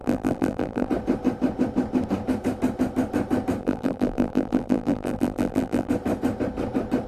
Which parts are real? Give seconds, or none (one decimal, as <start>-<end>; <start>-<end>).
0.9-3.6; 5.9-7.1